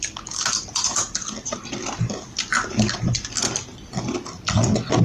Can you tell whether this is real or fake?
real